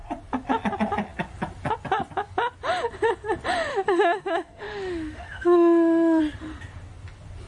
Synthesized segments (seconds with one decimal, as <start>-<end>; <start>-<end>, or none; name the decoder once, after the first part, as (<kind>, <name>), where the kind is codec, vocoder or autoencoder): 3.7-6.2 (autoencoder, DAC-VAE)